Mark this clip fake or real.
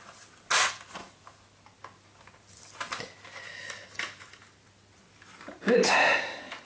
real